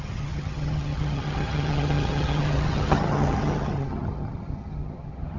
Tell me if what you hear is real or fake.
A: fake